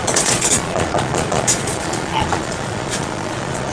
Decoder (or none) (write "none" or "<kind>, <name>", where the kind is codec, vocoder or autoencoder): vocoder, Vocos